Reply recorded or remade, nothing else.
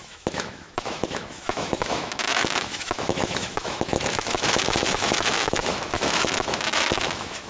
remade